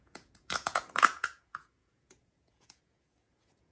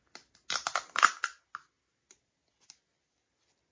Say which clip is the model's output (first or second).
first